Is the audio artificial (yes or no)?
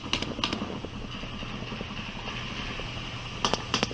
no